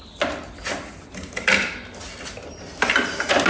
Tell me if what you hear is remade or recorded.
recorded